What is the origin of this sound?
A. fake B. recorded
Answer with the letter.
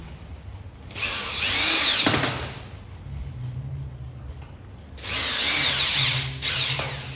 B